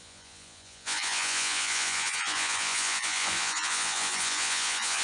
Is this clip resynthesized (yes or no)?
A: yes